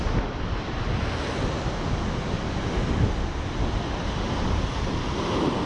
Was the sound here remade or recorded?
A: recorded